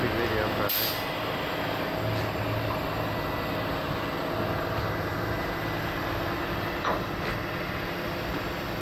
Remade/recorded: recorded